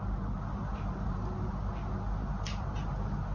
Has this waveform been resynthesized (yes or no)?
no